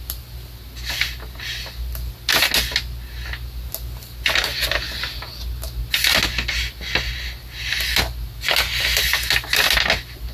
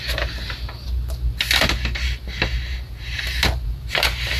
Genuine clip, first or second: first